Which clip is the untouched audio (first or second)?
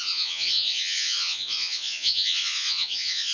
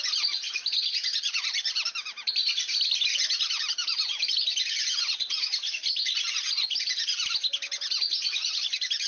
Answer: second